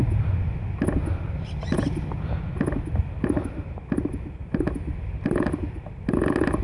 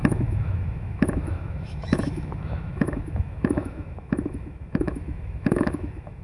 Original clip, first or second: first